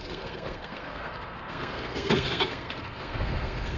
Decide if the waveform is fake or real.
fake